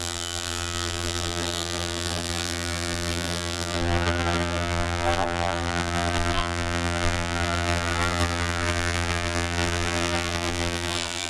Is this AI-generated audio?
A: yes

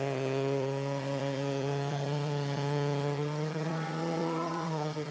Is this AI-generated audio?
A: yes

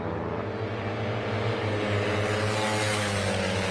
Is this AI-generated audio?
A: no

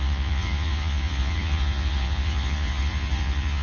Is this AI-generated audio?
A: yes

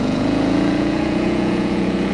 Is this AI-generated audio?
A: yes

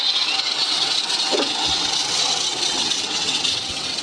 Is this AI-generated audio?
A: yes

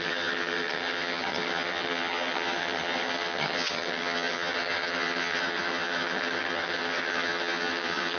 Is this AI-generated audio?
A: yes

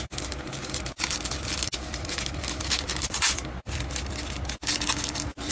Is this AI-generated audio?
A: no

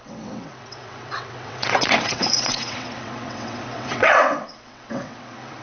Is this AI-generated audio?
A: yes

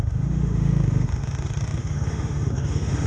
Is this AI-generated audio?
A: yes